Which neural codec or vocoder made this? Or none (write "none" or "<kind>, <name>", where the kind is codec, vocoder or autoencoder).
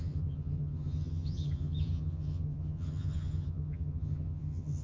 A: vocoder, HiFi-GAN